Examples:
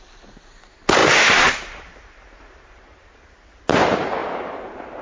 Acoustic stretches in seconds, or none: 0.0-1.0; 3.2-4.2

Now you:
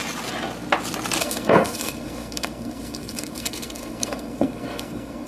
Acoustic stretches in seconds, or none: 0.0-1.2

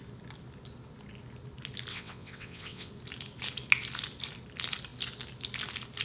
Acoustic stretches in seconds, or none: 0.0-1.9; 2.9-6.0

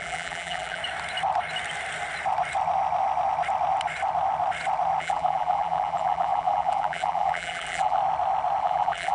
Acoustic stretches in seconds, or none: 0.8-5.0; 8.0-8.6

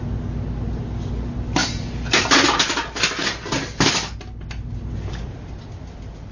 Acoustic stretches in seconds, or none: 0.0-6.3

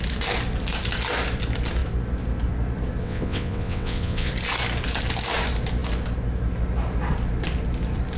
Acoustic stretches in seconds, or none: 0.0-3.0; 4.3-8.2

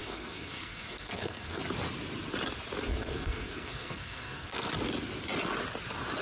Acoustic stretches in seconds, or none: 1.6-2.9; 4.7-6.2

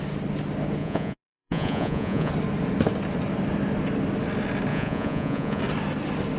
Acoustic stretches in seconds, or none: 0.0-0.8; 2.3-4.7; 5.6-6.4